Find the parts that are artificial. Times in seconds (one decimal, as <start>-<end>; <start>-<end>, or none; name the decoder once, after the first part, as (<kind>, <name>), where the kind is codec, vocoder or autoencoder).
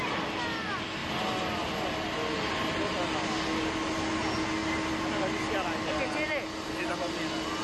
none